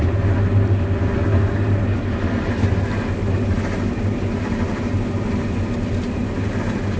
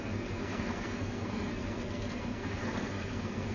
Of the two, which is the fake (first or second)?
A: second